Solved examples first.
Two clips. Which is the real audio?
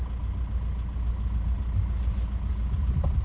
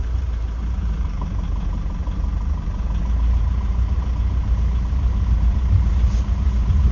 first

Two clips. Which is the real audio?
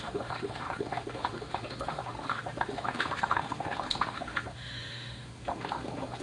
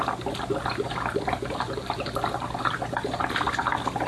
second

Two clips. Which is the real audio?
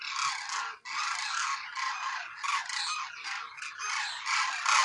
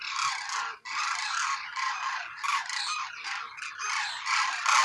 first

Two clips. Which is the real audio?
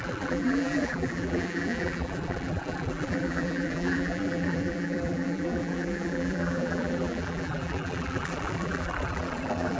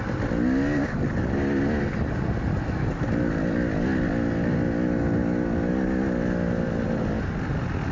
second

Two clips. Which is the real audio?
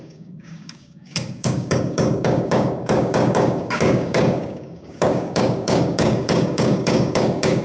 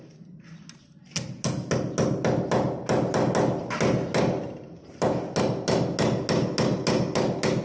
second